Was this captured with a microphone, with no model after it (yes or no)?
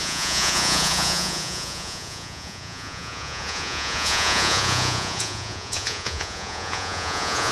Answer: no